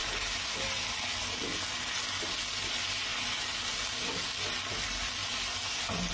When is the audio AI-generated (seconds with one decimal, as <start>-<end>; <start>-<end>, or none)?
none